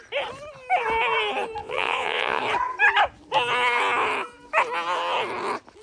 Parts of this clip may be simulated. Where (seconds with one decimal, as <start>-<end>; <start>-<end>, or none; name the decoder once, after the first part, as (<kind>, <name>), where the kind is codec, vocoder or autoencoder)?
1.6-2.4 (vocoder, Vocos)